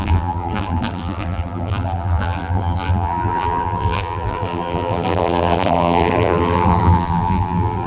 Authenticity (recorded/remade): remade